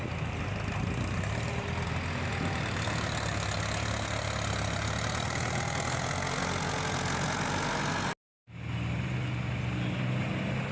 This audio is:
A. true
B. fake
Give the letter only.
A